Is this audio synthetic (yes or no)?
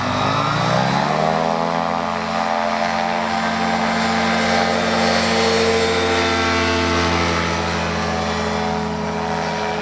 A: no